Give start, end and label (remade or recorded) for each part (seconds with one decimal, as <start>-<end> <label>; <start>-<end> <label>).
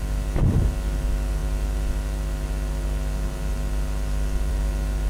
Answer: 0.0-5.1 recorded